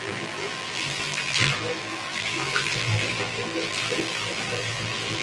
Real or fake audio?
fake